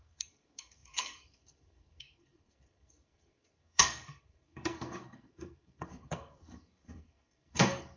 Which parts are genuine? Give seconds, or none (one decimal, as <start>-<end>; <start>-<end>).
none